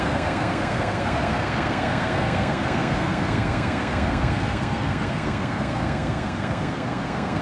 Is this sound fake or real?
fake